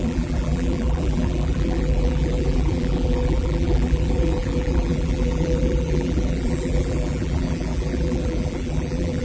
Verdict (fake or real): fake